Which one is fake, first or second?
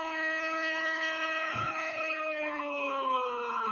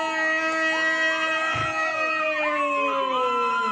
first